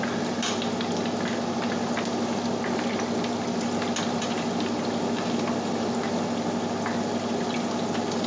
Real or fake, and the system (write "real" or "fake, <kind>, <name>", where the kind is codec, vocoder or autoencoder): real